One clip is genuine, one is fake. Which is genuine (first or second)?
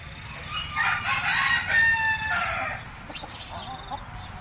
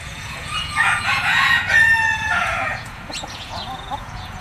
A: first